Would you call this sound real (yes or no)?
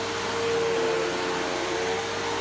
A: yes